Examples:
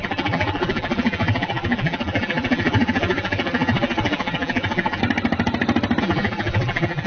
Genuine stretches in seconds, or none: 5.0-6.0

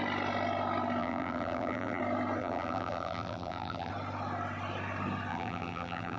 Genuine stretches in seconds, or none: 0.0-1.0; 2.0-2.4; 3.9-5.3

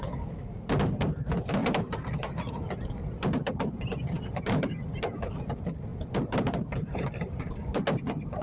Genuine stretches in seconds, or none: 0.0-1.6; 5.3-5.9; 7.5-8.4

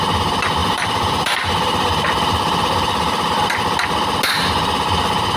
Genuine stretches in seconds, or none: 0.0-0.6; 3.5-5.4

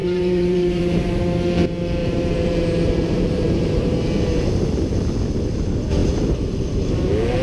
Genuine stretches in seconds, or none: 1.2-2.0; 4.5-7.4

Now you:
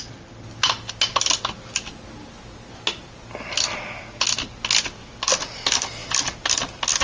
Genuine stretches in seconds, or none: 0.0-6.0; 6.5-7.0

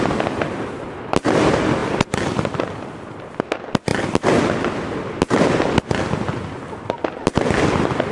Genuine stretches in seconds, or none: 0.0-8.1